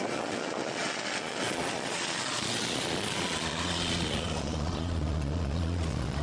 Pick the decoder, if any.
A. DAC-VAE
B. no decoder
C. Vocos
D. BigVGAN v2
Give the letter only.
C